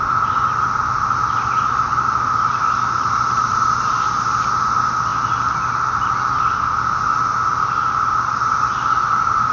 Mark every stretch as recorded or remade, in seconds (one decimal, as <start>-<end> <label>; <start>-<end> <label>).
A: 0.0-9.5 recorded